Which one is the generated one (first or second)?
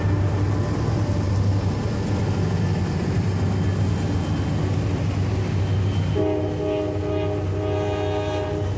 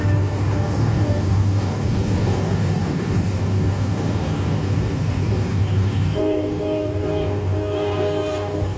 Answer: second